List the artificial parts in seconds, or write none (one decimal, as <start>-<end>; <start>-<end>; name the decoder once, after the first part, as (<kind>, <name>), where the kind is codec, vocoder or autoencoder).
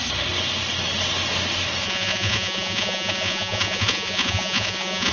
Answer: 1.8-5.1 (vocoder, Vocos)